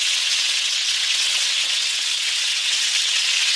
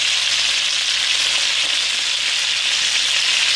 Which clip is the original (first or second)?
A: second